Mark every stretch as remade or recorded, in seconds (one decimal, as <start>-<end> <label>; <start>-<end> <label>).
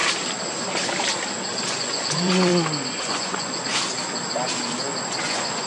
0.0-1.7 recorded; 1.7-2.5 remade; 2.5-3.0 recorded; 3.0-3.7 remade; 3.7-5.2 recorded; 5.2-5.7 remade